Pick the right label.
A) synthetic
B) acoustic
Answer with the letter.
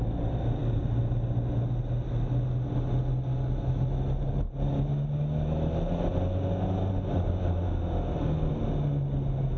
B